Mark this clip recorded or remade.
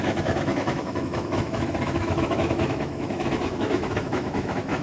remade